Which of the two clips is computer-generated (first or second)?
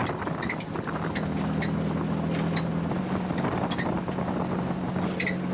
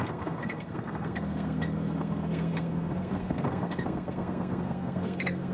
second